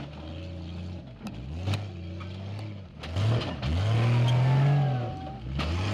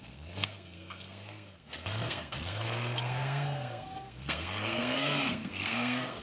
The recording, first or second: first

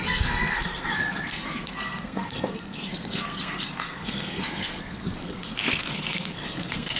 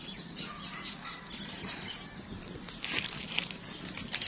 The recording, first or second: second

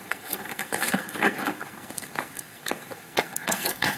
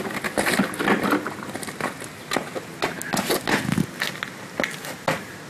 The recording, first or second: second